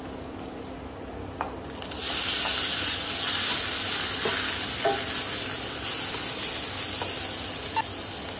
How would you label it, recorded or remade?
recorded